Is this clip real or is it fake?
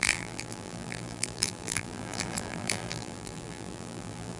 fake